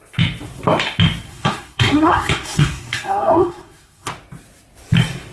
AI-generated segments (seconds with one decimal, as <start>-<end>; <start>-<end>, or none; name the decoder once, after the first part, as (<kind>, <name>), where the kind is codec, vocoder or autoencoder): 1.3-4.1 (codec, SNAC)